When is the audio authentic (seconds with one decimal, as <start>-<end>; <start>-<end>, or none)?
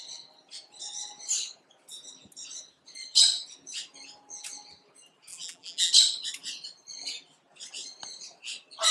0.0-5.3; 5.9-8.9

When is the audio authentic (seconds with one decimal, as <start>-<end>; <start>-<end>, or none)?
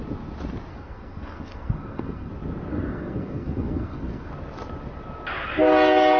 0.0-0.7; 2.3-2.7; 4.3-6.2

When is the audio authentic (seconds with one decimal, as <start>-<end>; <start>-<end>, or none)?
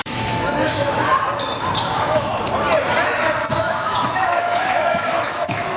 1.1-1.9; 2.3-3.6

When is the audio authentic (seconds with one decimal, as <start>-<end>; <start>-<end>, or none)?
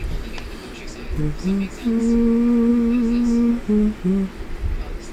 0.0-2.7; 3.5-5.1